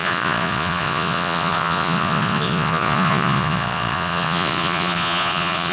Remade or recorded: remade